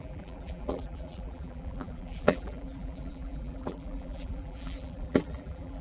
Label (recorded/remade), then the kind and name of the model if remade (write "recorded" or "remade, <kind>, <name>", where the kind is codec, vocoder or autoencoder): remade, vocoder, BigVGAN v2